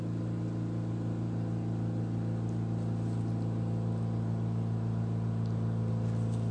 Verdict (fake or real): real